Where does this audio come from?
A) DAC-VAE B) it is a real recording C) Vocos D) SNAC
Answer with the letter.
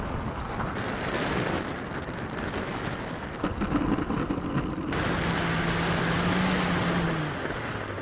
B